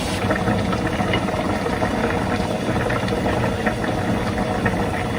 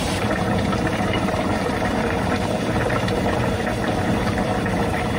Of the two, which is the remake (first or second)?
second